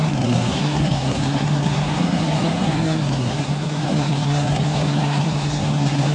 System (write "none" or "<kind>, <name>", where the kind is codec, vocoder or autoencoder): codec, SNAC